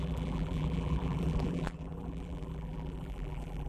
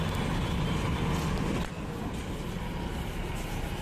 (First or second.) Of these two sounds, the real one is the second